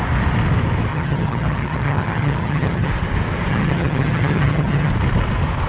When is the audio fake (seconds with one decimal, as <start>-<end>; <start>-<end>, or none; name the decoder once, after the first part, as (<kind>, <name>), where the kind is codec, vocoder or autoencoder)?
0.9-2.9 (vocoder, HiFi-GAN); 3.5-4.9